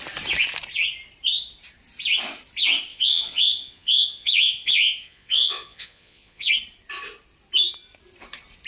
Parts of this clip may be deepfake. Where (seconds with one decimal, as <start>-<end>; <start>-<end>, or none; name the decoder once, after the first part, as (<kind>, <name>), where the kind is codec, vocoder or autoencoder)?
2.9-6.5 (vocoder, Vocos)